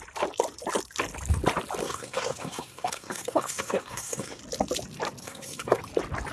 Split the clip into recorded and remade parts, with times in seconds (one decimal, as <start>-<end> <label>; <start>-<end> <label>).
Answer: 0.0-1.8 recorded; 1.8-4.4 remade; 4.4-5.2 recorded; 5.2-5.8 remade; 5.8-6.3 recorded